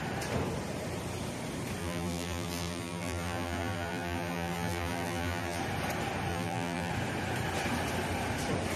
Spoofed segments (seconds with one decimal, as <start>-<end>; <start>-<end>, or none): 1.8-5.6; 6.3-6.9